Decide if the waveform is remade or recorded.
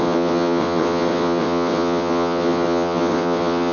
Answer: remade